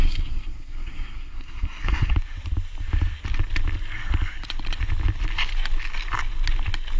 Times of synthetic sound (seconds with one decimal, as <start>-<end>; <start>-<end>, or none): 0.0-2.1